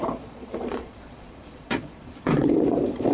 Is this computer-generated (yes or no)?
yes